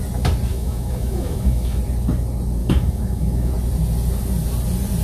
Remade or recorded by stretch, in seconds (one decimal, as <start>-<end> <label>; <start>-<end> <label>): 0.0-0.5 recorded; 0.5-1.8 remade; 1.8-2.6 recorded; 2.6-3.5 remade; 3.5-5.0 recorded